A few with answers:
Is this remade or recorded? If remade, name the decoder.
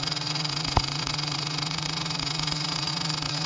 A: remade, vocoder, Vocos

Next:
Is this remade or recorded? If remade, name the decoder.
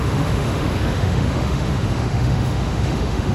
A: remade, autoencoder, DAC-VAE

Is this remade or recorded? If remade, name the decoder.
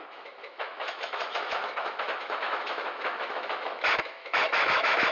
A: remade, autoencoder, DAC-VAE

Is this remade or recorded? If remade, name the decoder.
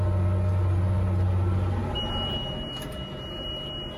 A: recorded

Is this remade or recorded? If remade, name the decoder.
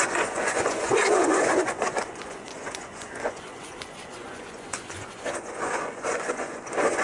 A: remade, vocoder, Vocos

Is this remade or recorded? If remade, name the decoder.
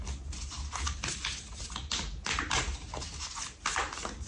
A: recorded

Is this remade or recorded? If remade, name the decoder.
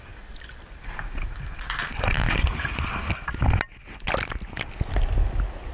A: recorded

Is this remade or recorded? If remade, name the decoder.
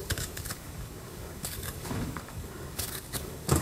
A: remade, codec, DAC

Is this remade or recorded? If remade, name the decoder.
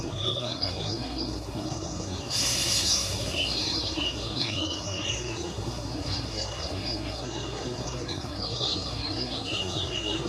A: remade, codec, SNAC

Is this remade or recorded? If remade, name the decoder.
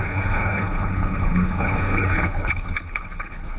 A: remade, codec, HILCodec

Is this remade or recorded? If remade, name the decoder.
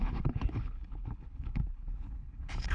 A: remade, codec, HILCodec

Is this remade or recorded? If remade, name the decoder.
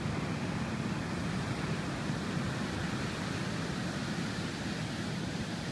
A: recorded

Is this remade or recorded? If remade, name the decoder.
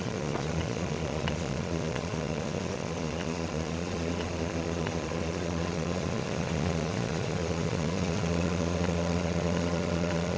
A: remade, vocoder, Vocos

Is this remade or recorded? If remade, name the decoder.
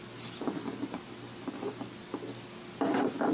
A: recorded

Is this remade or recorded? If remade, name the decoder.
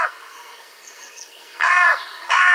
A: remade, codec, SNAC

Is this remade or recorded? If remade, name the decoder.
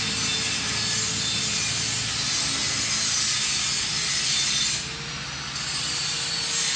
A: recorded